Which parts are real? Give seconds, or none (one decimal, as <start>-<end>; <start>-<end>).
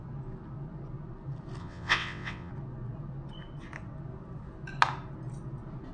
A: 0.0-1.6; 2.5-5.9